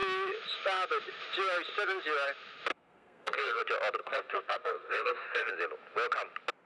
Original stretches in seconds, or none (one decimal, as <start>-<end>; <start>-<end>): 0.0-2.7; 3.6-4.0; 5.5-6.7